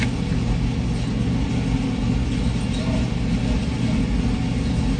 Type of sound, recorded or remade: recorded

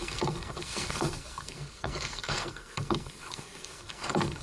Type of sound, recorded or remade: remade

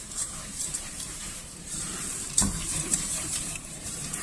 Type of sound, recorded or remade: remade